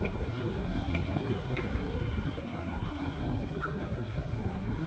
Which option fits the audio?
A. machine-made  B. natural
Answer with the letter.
A